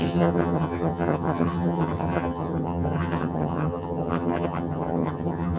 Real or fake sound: fake